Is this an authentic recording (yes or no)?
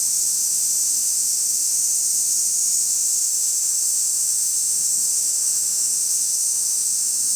no